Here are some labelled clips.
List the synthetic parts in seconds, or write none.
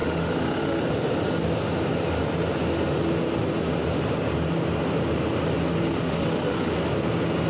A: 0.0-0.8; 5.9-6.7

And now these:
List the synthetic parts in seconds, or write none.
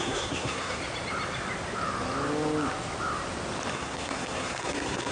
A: 0.0-0.8; 3.7-5.1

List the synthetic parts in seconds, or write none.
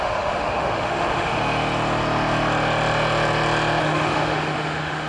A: 0.0-1.4; 3.8-5.1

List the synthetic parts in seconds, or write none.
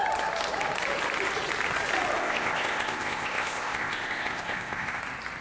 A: 2.2-5.0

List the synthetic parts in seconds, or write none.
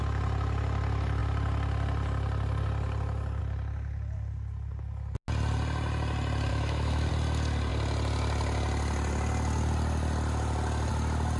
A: 6.5-7.1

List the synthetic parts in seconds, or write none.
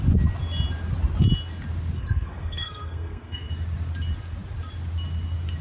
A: 2.0-3.5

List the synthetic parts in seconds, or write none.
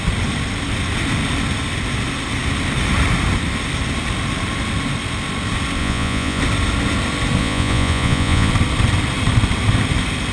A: 5.8-6.4; 7.4-8.5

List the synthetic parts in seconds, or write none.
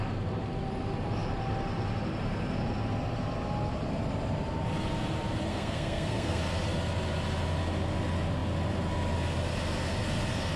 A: 5.5-6.4